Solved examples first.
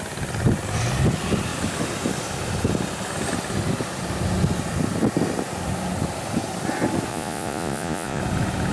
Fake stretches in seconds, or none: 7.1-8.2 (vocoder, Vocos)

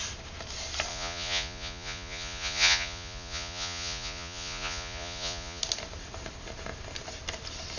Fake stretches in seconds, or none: 0.9-5.6 (vocoder, Vocos)

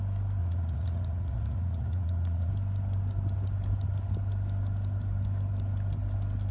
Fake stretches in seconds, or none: 0.4-2.5 (vocoder, Vocos)

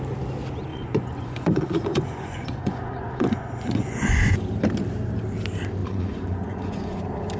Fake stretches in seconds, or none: 0.7-4.2 (vocoder, Vocos); 5.8-7.0